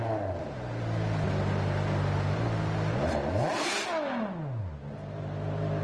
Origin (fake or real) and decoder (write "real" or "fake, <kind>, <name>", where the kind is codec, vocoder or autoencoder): real